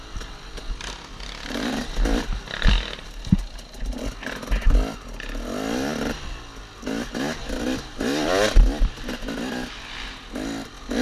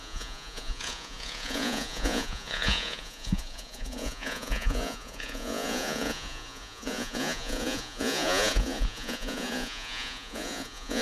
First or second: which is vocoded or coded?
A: second